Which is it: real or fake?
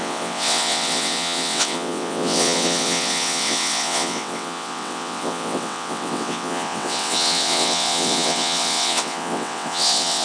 fake